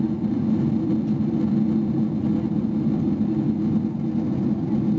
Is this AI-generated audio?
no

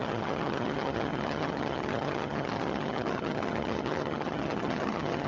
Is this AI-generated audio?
yes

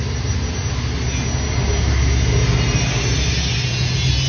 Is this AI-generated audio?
no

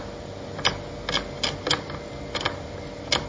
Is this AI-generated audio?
no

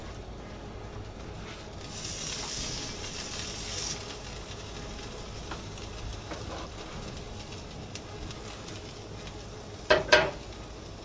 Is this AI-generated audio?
no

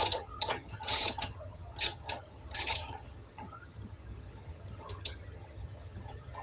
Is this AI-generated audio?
yes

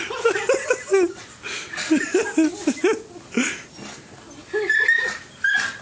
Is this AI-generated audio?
no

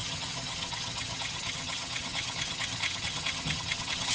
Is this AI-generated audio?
yes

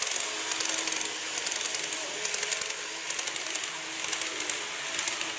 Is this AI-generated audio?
no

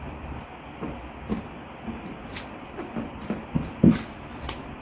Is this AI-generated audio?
no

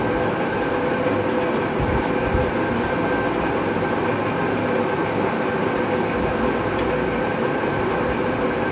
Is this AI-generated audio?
no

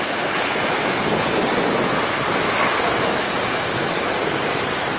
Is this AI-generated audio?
no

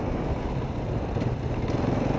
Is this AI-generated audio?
no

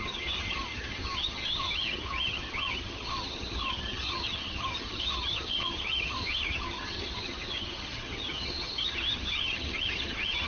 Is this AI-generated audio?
yes